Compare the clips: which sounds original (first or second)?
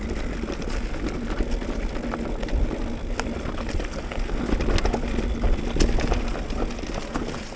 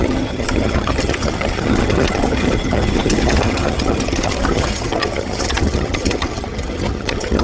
first